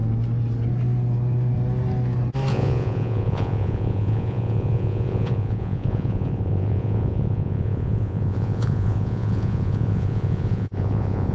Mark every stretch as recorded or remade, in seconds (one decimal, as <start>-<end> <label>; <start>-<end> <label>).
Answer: 0.0-2.5 recorded; 2.5-11.3 remade